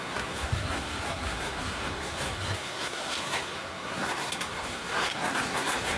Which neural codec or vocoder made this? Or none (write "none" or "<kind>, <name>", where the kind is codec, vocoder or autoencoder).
codec, SNAC